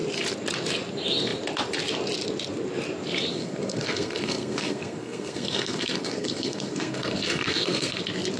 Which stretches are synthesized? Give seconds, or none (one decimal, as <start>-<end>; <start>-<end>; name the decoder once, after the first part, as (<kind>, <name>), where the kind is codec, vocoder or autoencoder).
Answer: 3.3-8.0 (codec, SNAC)